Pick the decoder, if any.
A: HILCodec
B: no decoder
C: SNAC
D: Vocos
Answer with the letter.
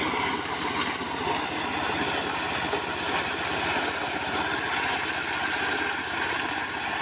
B